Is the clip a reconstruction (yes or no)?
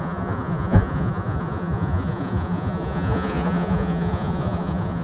yes